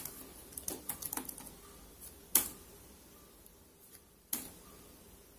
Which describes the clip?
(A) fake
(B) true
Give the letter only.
B